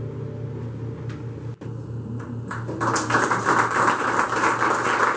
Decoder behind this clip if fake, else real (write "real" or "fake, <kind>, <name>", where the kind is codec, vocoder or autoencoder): real